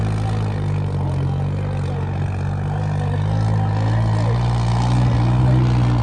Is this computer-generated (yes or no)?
no